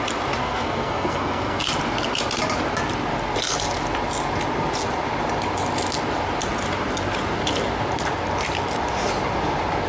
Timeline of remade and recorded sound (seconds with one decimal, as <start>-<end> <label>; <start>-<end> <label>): 0.0-0.4 recorded; 0.4-1.6 remade; 1.6-9.9 recorded